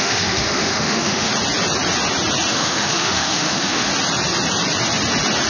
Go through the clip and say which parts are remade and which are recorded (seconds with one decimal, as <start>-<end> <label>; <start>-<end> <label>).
0.0-1.3 remade; 1.3-2.5 recorded; 2.5-3.9 remade; 3.9-5.5 recorded

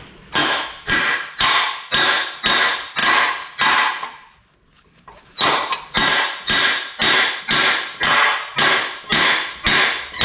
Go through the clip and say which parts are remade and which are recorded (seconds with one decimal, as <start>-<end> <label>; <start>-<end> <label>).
0.0-0.4 recorded; 0.4-0.9 remade; 0.9-10.2 recorded

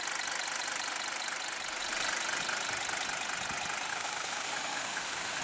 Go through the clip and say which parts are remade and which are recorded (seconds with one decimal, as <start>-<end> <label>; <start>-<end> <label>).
0.0-3.9 recorded; 3.9-5.4 remade

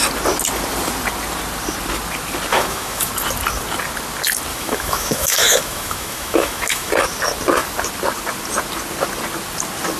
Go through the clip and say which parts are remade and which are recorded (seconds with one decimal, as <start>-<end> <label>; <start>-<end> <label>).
0.0-2.5 recorded; 2.5-3.1 remade; 3.1-4.5 recorded; 4.5-6.9 remade; 6.9-10.0 recorded

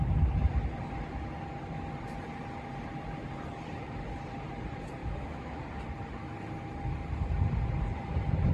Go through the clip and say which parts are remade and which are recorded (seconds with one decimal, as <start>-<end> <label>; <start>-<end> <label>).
0.0-5.0 recorded; 5.0-5.6 remade; 5.6-8.5 recorded

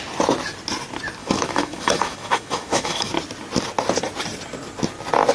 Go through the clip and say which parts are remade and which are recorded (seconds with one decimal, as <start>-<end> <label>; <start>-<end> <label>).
0.0-1.2 recorded; 1.2-3.1 remade; 3.1-5.3 recorded

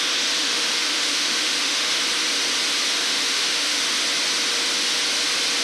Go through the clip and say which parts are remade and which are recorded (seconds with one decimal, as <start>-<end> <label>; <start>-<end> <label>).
0.0-0.4 recorded; 0.4-2.0 remade; 2.0-3.0 recorded; 3.0-3.8 remade; 3.8-5.6 recorded

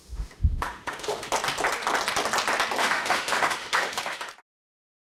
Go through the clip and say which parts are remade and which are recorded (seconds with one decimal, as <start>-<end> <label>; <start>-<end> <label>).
0.0-1.3 remade; 1.3-2.8 recorded; 2.8-4.3 remade; 4.3-5.0 recorded